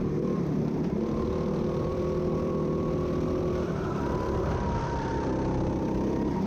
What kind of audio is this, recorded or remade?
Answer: remade